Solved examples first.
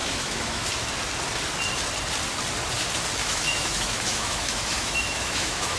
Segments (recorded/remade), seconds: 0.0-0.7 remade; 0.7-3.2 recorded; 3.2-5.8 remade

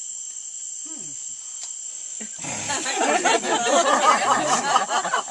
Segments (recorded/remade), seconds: 0.0-5.3 recorded

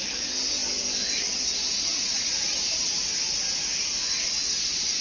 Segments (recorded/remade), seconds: 0.0-5.0 recorded

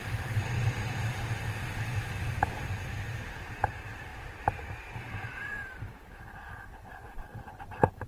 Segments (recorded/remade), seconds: 0.0-2.6 remade; 2.6-3.2 recorded; 3.2-4.1 remade; 4.1-8.1 recorded